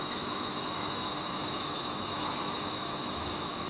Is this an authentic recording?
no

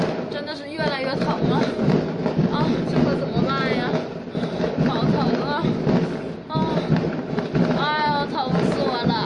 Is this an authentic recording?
yes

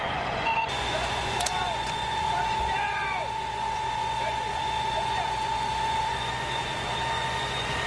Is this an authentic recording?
no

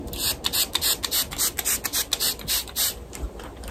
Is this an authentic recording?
yes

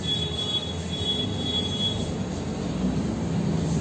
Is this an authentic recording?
yes